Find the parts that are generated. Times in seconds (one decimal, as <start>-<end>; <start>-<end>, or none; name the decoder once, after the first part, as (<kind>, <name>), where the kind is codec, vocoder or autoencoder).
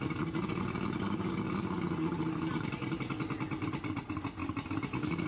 0.0-5.3 (vocoder, BigVGAN v2)